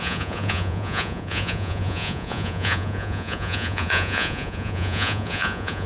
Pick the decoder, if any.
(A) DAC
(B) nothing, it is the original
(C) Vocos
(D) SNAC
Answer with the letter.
C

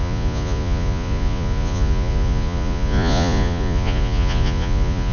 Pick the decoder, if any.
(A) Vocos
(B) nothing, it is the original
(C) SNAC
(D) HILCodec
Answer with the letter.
A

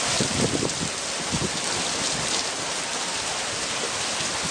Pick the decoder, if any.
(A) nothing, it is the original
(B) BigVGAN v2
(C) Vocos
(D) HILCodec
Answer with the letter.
A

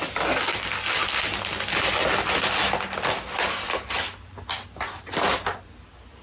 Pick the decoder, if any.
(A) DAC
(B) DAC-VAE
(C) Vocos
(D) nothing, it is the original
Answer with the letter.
D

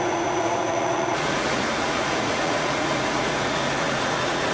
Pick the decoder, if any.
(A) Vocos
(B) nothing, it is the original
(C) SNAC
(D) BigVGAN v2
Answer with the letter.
A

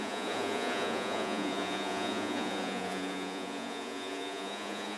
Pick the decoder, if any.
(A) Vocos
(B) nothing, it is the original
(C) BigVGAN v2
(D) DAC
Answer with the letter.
A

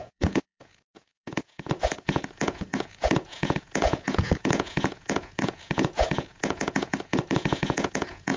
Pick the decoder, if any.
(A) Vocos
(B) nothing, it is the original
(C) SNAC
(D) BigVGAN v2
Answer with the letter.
A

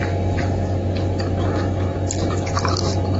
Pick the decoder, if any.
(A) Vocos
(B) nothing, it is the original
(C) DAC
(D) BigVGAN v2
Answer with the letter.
B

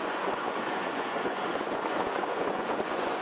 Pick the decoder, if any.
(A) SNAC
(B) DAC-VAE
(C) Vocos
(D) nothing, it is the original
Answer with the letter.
C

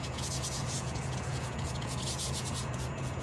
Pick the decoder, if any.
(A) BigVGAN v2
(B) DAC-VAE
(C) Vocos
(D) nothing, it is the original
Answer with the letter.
C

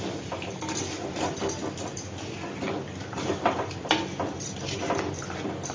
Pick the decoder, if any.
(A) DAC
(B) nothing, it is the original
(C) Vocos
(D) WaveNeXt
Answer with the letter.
B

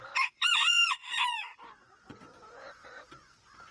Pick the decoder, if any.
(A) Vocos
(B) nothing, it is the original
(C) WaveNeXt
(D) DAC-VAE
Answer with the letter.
A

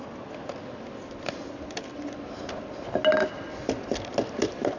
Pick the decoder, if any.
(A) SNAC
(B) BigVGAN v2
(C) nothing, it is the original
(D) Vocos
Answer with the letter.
C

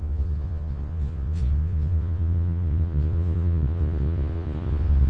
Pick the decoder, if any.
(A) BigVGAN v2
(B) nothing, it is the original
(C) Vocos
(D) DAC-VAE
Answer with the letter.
C